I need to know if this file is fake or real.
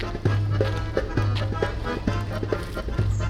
real